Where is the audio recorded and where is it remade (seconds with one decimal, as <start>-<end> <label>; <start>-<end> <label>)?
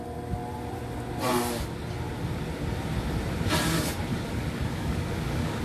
0.0-4.1 recorded; 4.1-5.6 remade